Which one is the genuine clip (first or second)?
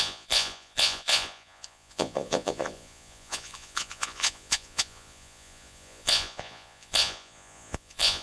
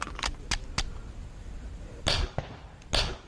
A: second